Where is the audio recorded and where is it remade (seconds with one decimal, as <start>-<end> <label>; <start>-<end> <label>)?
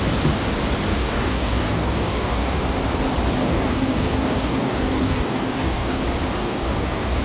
0.0-0.9 recorded; 0.9-2.6 remade; 2.6-3.4 recorded; 3.4-6.0 remade; 6.0-6.4 recorded; 6.4-7.2 remade